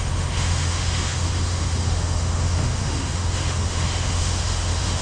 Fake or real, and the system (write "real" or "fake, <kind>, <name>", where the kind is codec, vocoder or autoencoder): fake, autoencoder, DAC-VAE